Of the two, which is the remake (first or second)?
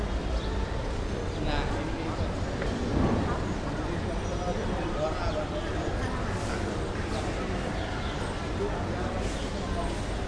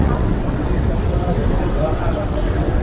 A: second